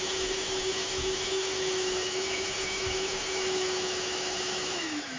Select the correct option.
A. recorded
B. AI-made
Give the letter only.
B